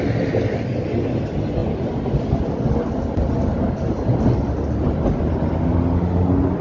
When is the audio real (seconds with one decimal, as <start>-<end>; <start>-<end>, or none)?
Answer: 0.0-6.6